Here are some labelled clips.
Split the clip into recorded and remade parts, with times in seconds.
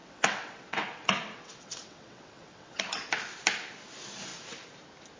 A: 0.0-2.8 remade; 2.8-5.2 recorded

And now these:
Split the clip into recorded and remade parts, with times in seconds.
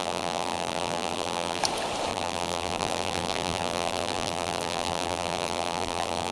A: 0.0-1.6 remade; 1.6-2.1 recorded; 2.1-6.3 remade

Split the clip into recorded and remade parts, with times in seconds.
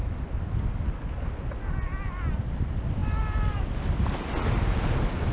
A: 0.0-5.3 recorded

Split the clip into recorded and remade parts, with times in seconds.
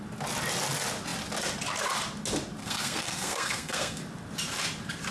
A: 0.0-2.6 recorded; 2.6-4.0 remade; 4.0-5.1 recorded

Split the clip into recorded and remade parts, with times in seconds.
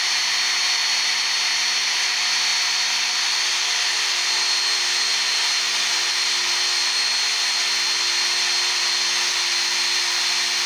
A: 0.0-10.7 recorded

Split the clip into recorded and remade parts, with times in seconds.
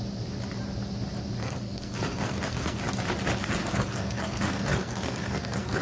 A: 0.0-1.4 recorded; 1.4-2.8 remade; 2.8-3.6 recorded; 3.6-5.8 remade